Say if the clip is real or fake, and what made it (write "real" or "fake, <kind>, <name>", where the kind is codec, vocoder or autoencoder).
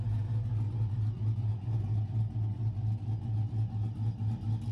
real